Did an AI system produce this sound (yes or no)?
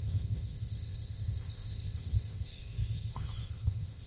yes